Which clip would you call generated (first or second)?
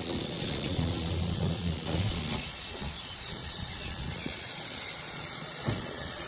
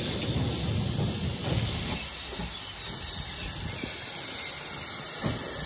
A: first